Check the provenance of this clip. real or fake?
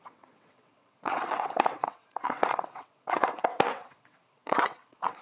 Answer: fake